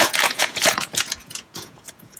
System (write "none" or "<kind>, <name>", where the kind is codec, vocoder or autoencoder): vocoder, Vocos